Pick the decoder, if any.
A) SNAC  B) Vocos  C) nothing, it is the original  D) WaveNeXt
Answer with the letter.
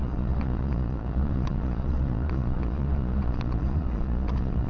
B